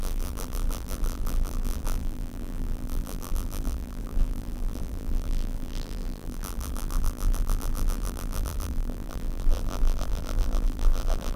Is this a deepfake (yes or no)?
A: yes